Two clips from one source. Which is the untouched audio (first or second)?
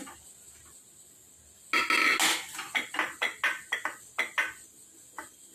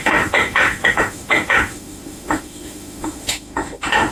first